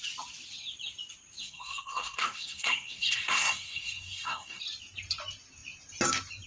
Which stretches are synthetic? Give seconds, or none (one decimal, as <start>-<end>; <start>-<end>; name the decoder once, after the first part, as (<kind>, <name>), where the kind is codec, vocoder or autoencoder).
1.4-4.6 (codec, SNAC)